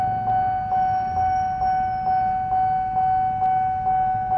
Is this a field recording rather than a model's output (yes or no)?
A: yes